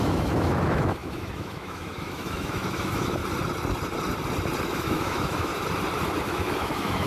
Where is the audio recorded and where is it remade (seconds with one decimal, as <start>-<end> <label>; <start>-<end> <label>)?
0.0-3.2 remade; 3.2-4.6 recorded; 4.6-5.5 remade; 5.5-6.2 recorded; 6.2-7.1 remade